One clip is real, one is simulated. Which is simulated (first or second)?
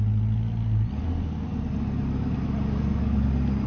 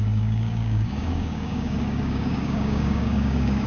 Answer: second